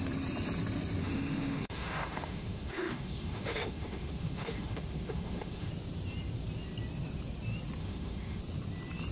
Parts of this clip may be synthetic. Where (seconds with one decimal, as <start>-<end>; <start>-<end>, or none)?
1.0-5.7; 7.8-8.4

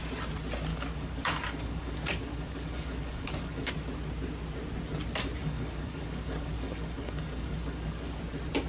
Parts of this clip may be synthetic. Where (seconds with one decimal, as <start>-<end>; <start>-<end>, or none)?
0.7-3.7; 5.4-8.2

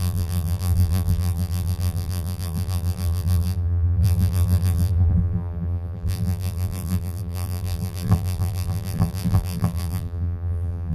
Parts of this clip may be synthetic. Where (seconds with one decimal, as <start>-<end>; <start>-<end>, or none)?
0.0-10.9

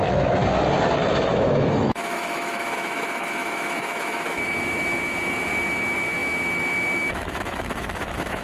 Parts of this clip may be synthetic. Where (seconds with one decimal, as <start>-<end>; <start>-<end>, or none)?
0.0-0.4; 1.1-8.4

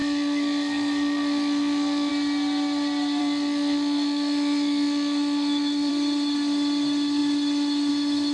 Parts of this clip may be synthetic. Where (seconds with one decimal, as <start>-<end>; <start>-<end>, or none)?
0.0-2.1; 3.2-5.9